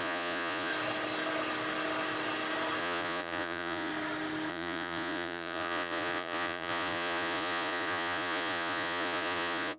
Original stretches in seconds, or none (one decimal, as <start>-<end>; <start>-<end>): 0.7-2.8; 3.9-4.5